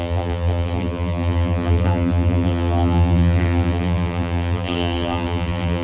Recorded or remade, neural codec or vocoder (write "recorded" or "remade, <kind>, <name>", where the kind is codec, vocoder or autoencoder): remade, vocoder, BigVGAN v2